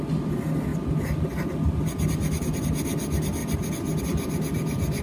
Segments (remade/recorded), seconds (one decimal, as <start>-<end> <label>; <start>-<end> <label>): 0.0-5.0 recorded